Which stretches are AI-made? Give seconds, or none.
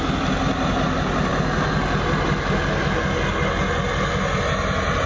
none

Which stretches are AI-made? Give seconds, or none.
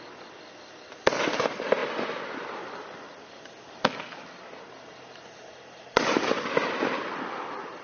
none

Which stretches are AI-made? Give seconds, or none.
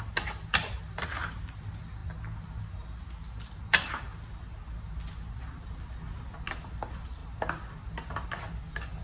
none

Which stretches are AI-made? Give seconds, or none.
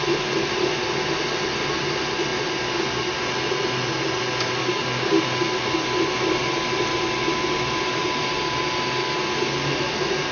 4.6-5.2 (codec, DAC)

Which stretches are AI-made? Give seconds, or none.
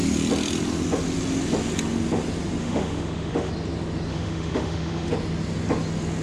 2.6-3.5 (autoencoder, DAC-VAE); 4.1-5.1